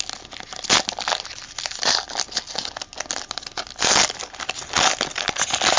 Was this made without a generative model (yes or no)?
yes